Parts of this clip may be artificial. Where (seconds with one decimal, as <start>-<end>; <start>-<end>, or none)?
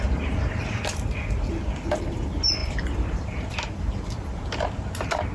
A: 2.6-3.5